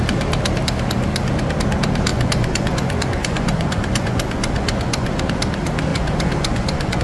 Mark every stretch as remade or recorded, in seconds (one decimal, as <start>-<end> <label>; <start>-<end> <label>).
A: 0.0-2.1 recorded; 2.1-5.2 remade; 5.2-5.9 recorded; 5.9-7.0 remade